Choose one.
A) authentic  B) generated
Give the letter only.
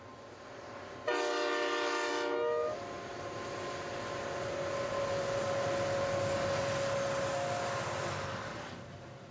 A